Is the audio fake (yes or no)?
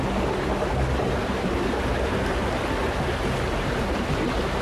no